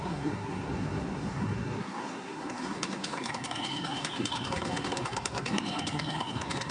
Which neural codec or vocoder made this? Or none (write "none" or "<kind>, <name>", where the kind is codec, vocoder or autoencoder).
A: codec, SNAC